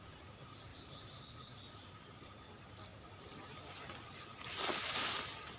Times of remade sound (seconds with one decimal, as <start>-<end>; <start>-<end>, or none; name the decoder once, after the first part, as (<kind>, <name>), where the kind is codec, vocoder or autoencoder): 0.7-1.2 (vocoder, BigVGAN v2)